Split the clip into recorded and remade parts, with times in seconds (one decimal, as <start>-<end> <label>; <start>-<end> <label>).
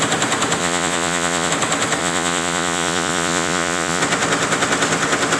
0.0-0.6 recorded; 0.6-1.5 remade; 1.5-2.0 recorded; 2.0-4.0 remade; 4.0-5.4 recorded